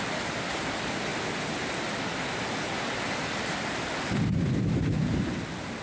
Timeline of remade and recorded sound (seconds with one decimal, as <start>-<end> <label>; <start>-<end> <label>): 0.0-5.8 recorded